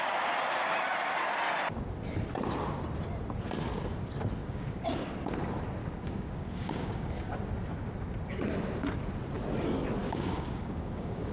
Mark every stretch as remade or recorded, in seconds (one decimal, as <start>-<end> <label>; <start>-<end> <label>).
0.0-4.4 recorded; 4.4-5.1 remade; 5.1-5.8 recorded; 5.8-7.3 remade; 7.3-10.0 recorded; 10.0-11.3 remade